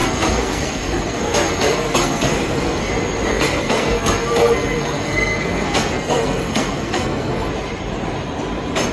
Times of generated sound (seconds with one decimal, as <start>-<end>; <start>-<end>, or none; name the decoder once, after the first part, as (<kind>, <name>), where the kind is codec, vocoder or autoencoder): 0.0-2.8 (codec, SNAC); 3.3-7.5